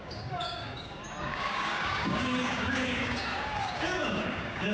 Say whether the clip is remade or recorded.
remade